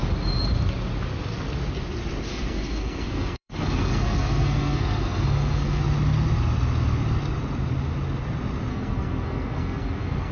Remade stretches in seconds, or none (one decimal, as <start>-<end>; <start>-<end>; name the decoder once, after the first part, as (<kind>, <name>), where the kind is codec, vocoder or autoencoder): 2.3-5.8 (codec, SNAC); 8.7-10.3